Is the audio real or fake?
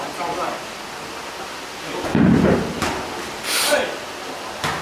real